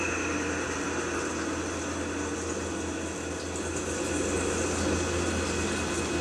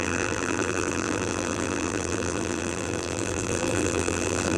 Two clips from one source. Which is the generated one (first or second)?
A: second